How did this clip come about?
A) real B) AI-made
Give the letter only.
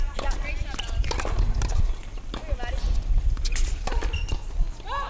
A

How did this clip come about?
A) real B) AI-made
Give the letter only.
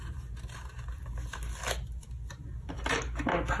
A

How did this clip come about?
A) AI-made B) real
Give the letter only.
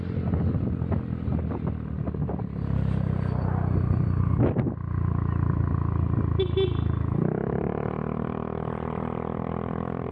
B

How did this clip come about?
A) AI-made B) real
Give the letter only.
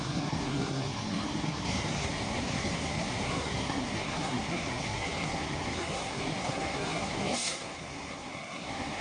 A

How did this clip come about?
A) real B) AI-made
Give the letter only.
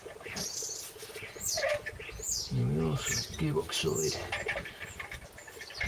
A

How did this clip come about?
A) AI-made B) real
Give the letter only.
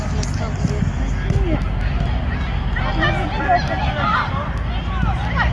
B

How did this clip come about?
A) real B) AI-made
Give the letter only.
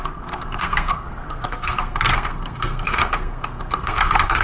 B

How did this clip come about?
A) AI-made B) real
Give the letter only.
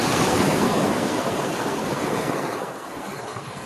A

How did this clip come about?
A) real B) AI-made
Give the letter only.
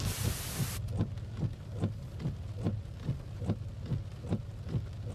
A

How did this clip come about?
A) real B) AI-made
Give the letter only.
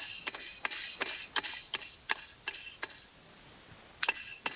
A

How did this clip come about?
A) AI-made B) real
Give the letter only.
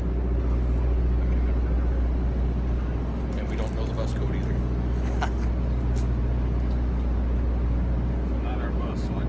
B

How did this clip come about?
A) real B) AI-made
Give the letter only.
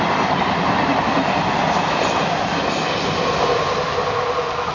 A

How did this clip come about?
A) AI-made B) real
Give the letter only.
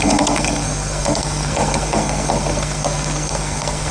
A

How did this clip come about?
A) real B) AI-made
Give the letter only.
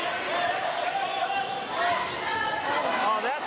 A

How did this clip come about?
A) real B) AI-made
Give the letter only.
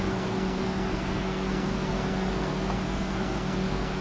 B